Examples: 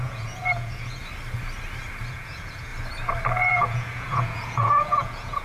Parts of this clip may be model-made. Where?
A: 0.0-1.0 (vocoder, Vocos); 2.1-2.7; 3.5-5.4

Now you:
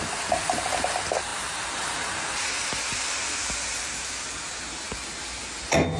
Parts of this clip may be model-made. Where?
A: none

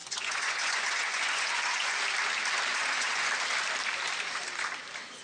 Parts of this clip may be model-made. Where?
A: 0.0-2.0 (vocoder, Vocos); 2.7-3.3

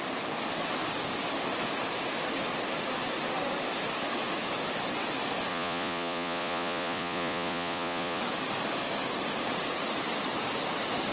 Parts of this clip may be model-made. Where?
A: 5.5-8.2 (vocoder, Vocos)

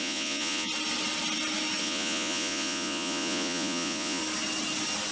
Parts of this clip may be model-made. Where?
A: 0.0-0.7 (vocoder, Vocos); 1.8-4.2

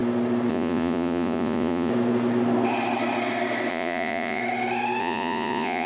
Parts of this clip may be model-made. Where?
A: 0.5-1.9 (vocoder, Vocos); 3.7-4.4; 5.0-5.9

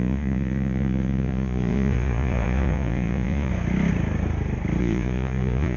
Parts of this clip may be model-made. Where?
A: 0.0-3.5 (vocoder, Vocos); 4.8-5.8

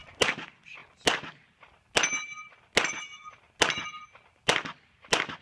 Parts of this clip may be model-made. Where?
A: none